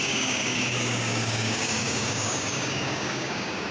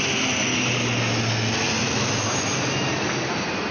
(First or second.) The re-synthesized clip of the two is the first